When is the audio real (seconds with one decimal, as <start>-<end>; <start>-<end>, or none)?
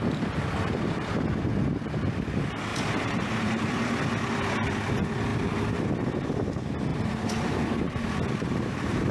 0.0-2.7; 4.0-6.9; 8.1-9.1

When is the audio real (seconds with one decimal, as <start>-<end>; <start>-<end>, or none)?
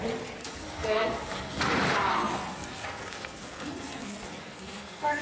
0.0-0.4; 1.6-2.1